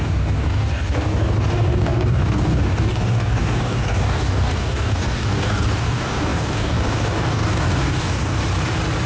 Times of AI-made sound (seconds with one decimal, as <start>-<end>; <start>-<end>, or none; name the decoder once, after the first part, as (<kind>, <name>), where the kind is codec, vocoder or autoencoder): 0.0-8.4 (codec, DAC)